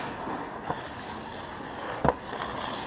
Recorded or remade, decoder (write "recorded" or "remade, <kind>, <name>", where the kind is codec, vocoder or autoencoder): recorded